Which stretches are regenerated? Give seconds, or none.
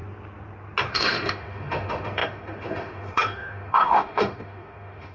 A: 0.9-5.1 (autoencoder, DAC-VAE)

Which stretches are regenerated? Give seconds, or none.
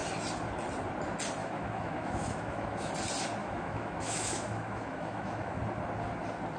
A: 1.4-2.9 (autoencoder, DAC-VAE); 3.4-5.6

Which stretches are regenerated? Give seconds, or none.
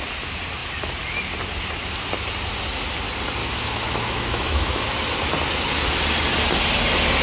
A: 3.4-4.8 (autoencoder, DAC-VAE)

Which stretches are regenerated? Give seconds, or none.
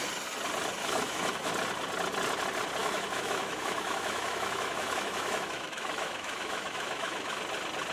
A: 0.8-1.5 (autoencoder, DAC-VAE); 2.8-7.4